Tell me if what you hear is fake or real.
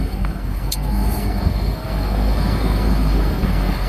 fake